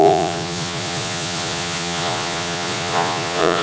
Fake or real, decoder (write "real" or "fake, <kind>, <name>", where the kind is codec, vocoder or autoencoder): fake, vocoder, Vocos